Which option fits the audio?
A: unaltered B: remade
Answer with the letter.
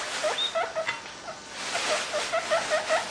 A